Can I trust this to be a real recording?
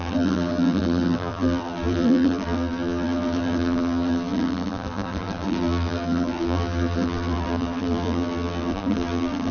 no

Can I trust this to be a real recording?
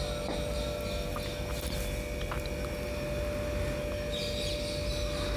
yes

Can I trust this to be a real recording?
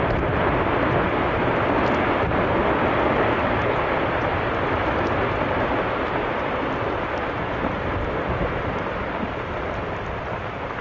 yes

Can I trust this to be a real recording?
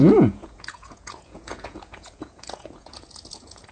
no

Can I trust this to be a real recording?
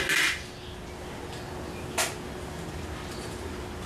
yes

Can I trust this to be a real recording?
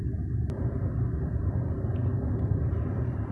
no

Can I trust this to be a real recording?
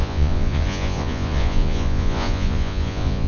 no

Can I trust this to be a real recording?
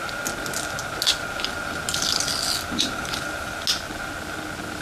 yes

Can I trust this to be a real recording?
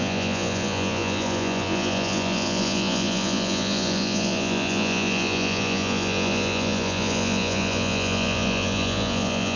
no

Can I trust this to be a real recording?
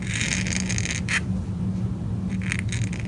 yes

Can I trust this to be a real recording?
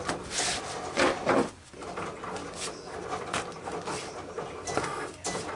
yes